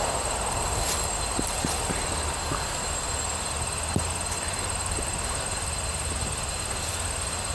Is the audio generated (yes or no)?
no